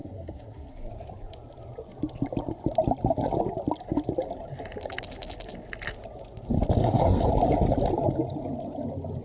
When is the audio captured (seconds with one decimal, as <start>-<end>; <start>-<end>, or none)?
0.9-6.8; 7.3-9.2

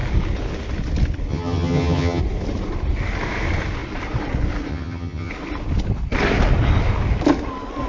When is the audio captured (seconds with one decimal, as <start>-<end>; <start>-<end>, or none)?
0.0-1.3; 2.2-4.7; 5.3-7.9

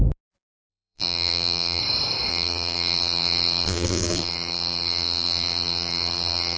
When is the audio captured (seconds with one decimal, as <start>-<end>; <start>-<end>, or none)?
0.0-0.7; 1.8-2.3

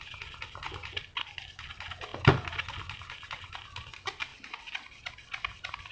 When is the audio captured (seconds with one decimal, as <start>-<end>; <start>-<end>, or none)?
0.0-5.9